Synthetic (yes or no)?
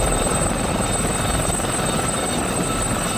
yes